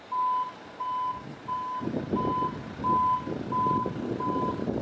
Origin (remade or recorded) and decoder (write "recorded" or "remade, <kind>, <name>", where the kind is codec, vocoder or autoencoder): recorded